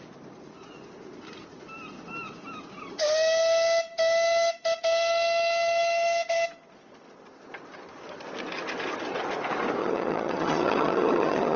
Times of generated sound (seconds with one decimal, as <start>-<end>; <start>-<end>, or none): 9.8-11.6